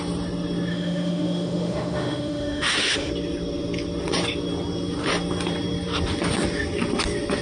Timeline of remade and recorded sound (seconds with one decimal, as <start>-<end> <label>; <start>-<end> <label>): 0.0-0.7 recorded; 0.7-3.1 remade; 3.1-7.4 recorded